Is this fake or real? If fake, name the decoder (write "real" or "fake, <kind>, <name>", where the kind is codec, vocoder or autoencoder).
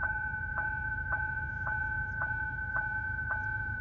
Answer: fake, vocoder, Vocos